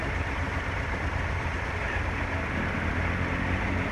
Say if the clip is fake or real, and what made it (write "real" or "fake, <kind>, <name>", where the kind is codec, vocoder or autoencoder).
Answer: real